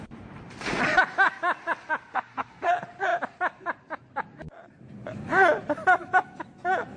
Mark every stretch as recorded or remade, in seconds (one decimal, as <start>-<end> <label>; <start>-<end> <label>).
0.0-2.1 recorded; 2.1-2.7 remade; 2.7-7.0 recorded